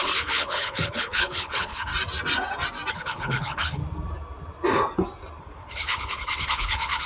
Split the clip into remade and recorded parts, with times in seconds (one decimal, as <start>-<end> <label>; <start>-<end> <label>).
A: 0.0-1.9 remade; 1.9-2.9 recorded; 2.9-3.8 remade; 3.8-5.4 recorded; 5.4-7.1 remade